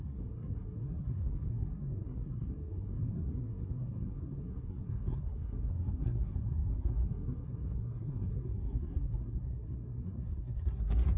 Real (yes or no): no